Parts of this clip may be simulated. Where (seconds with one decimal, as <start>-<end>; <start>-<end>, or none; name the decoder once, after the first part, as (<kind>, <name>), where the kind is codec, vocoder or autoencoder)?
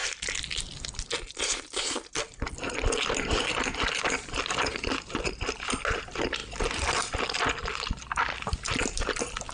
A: none